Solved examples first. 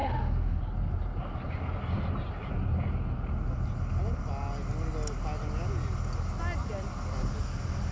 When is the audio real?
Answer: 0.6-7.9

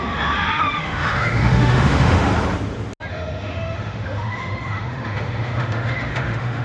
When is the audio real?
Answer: 2.3-3.1